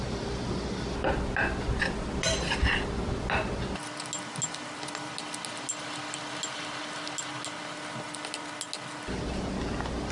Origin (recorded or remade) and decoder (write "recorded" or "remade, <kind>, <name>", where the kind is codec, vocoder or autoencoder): recorded